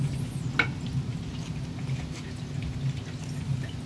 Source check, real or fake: real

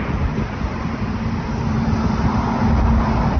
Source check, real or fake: real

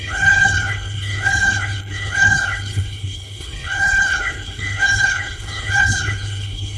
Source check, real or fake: fake